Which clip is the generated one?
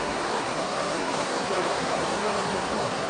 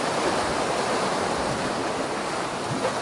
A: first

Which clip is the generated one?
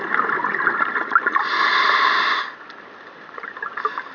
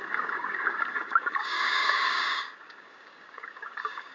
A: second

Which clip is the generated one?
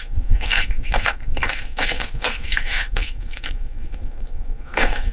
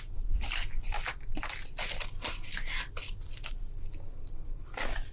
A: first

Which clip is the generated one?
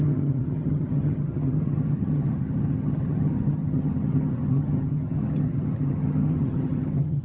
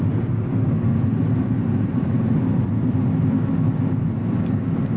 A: first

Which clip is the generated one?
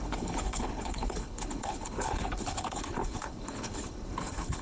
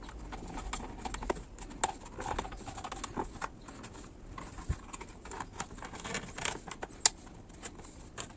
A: first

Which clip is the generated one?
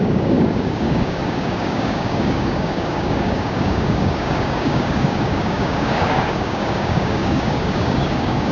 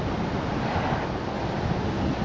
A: first